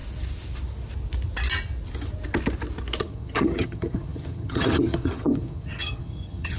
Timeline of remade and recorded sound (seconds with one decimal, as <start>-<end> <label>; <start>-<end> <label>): 0.0-3.0 recorded; 3.0-6.6 remade